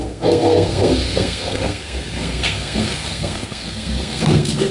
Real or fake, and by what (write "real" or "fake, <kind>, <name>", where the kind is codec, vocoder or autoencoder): fake, codec, SNAC